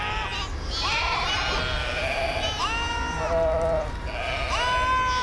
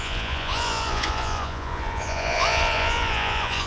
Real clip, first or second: first